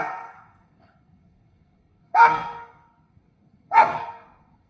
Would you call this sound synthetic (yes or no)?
yes